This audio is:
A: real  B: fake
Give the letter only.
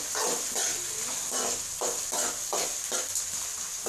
A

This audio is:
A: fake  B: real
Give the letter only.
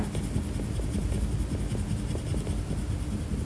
B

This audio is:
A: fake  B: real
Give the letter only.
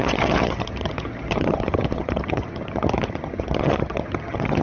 A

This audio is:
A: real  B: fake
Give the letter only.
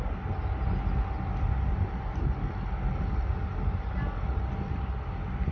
A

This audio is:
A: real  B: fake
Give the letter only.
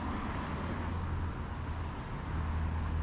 A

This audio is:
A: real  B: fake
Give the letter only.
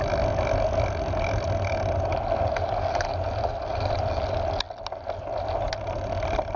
A